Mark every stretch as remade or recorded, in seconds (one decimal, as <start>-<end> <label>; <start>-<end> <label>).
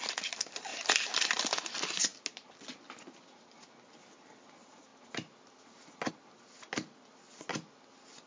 0.0-8.3 recorded